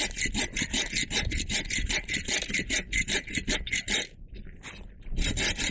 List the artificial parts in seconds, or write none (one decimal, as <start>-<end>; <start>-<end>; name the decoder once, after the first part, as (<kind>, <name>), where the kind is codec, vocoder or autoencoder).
none

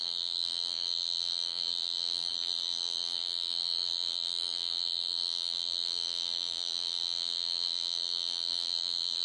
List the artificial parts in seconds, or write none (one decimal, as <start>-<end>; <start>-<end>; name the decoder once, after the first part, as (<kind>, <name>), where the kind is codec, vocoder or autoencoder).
0.0-9.2 (vocoder, BigVGAN v2)

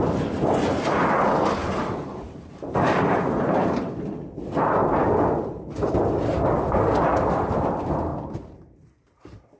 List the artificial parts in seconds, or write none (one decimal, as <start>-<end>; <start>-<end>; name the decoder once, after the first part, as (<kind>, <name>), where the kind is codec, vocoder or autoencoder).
1.6-3.9 (vocoder, BigVGAN v2); 8.1-9.2

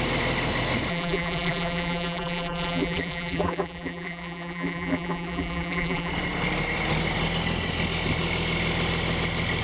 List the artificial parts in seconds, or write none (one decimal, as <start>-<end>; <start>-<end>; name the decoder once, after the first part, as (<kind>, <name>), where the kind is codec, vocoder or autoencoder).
0.9-6.1 (vocoder, BigVGAN v2)